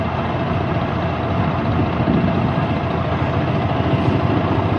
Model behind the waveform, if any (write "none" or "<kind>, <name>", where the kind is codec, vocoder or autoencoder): none